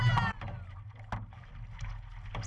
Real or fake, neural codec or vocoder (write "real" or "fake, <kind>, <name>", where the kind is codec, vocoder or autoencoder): real